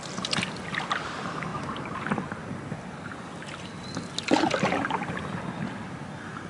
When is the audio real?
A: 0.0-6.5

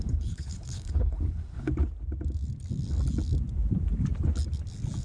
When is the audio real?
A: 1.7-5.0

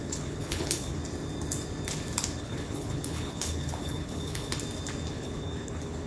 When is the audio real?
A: 1.0-2.4; 4.5-5.1